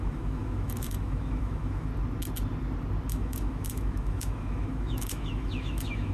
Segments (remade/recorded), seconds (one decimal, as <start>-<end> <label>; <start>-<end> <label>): 0.0-1.9 remade; 1.9-3.1 recorded; 3.1-6.1 remade